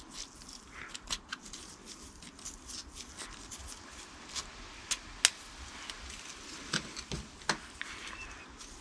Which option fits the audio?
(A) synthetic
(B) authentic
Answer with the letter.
B